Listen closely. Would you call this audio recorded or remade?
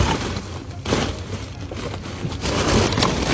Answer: recorded